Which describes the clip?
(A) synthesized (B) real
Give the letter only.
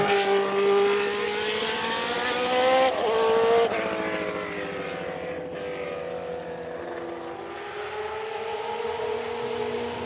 B